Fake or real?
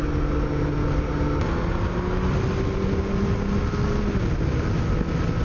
real